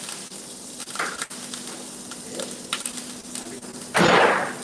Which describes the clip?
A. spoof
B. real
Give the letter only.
B